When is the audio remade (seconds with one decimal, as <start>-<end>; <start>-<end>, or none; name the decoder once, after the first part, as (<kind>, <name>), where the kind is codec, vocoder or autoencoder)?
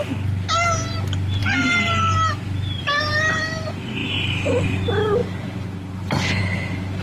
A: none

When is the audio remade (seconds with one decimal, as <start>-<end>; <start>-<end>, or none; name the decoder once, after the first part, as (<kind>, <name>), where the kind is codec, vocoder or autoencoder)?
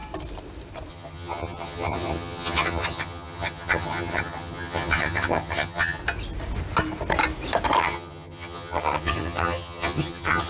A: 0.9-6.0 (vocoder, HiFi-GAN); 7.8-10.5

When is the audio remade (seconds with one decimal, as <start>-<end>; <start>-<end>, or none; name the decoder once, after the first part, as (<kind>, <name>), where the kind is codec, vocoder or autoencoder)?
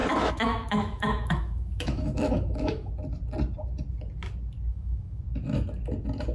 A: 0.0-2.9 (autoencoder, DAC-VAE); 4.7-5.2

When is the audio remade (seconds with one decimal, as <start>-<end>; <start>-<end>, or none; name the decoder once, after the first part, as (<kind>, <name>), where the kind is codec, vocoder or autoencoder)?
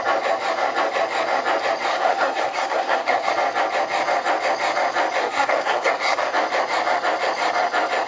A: 1.9-3.3 (codec, SNAC); 5.2-6.3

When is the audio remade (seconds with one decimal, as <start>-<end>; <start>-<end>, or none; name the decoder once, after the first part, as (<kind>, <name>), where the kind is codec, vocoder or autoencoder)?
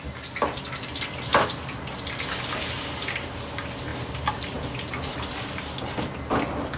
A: none